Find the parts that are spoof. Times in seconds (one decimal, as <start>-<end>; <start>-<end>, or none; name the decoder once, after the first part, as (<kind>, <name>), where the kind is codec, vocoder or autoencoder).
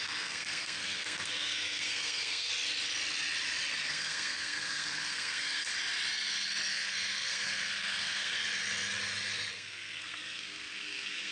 0.0-2.5 (codec, SNAC); 3.9-5.7; 6.7-8.4; 9.5-11.3